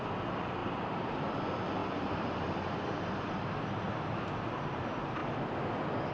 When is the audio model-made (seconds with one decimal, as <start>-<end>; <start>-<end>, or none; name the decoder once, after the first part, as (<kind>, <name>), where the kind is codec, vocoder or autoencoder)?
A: 0.6-1.2 (vocoder, BigVGAN v2); 1.8-3.9